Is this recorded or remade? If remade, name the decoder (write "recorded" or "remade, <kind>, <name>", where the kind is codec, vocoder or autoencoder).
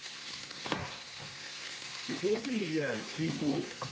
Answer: remade, codec, SNAC